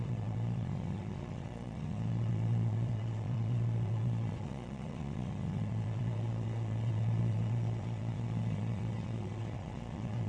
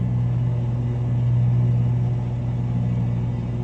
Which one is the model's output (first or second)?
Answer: first